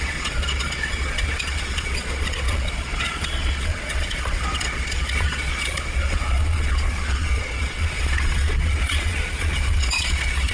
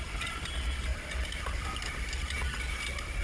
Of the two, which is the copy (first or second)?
first